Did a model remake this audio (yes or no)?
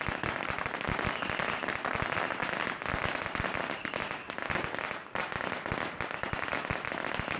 no